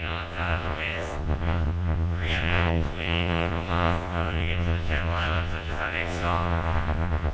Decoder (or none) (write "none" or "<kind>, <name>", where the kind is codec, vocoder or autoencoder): vocoder, Vocos